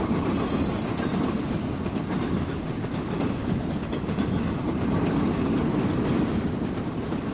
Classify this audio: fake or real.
real